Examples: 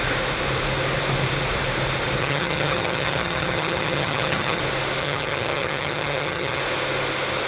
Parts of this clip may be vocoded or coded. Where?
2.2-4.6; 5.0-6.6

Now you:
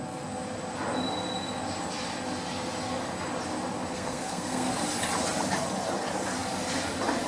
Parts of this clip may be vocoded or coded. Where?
3.9-4.7

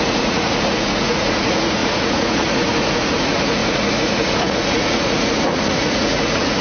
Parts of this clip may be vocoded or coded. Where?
0.0-6.6

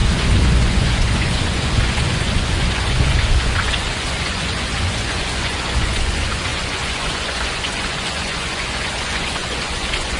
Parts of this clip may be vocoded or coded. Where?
0.0-10.2

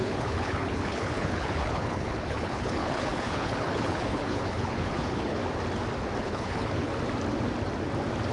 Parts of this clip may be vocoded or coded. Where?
0.0-5.4; 6.2-6.9

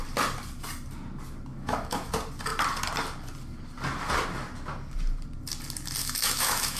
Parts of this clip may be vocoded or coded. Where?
1.5-2.1; 6.0-6.8

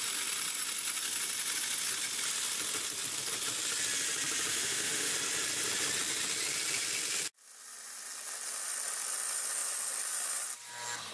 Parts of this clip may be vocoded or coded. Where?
4.5-5.1